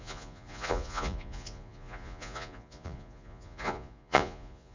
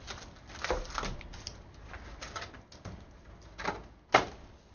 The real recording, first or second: second